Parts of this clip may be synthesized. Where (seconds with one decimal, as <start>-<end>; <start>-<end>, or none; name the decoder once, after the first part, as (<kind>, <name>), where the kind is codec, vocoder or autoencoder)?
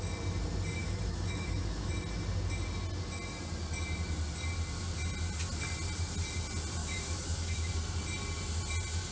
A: 0.8-1.9 (autoencoder, DAC-VAE); 6.8-7.7